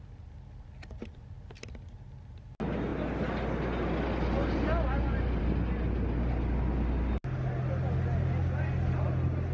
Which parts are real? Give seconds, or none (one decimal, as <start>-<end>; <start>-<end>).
0.0-9.5